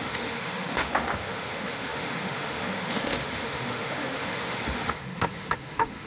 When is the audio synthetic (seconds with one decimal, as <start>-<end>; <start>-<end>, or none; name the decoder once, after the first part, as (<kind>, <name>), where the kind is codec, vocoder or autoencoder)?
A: 0.0-6.1 (autoencoder, DAC-VAE)